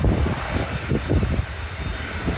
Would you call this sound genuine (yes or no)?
yes